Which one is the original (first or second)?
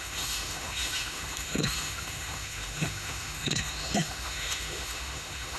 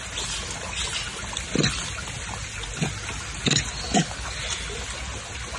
second